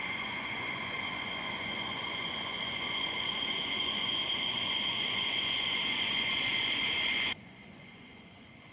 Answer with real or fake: fake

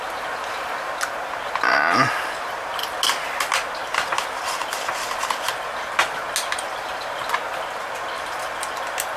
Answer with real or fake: real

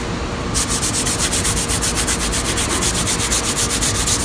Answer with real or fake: real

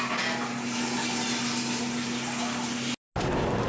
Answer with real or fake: real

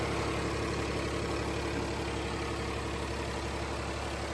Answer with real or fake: real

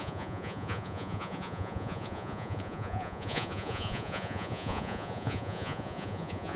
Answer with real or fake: fake